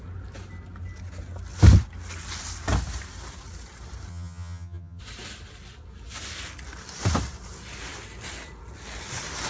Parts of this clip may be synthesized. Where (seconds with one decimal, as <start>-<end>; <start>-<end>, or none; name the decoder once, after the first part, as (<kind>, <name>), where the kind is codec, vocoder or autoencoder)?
4.1-5.0 (vocoder, HiFi-GAN)